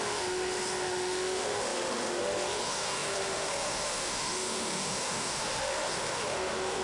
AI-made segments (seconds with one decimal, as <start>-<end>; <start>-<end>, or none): 0.0-6.8